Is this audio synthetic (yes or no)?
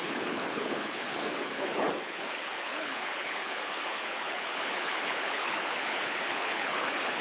yes